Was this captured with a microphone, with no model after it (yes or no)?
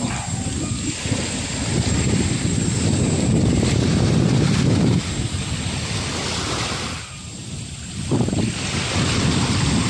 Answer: yes